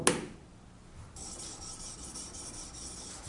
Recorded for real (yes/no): yes